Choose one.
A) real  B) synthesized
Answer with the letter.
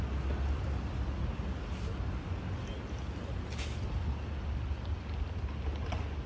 A